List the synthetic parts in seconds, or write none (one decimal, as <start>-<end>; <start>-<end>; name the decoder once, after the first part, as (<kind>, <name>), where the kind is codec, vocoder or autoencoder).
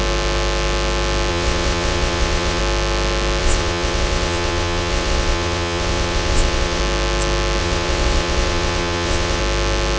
1.3-2.6 (vocoder, WaveNeXt); 3.4-6.8; 7.6-9.4